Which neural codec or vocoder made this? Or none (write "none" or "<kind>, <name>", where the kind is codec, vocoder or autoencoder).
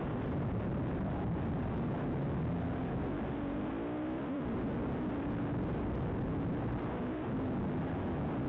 none